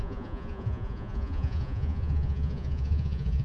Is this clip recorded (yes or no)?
no